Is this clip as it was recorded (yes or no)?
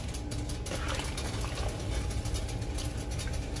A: yes